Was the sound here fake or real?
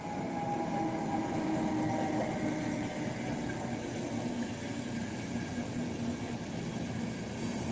real